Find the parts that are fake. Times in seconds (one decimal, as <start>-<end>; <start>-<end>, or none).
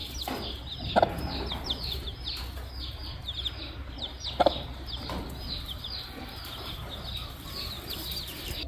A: none